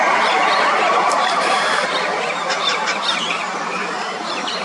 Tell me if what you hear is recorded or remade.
remade